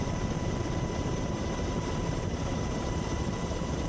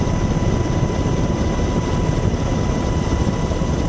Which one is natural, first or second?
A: second